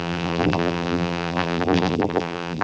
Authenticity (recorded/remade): remade